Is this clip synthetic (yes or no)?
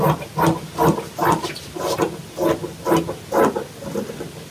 no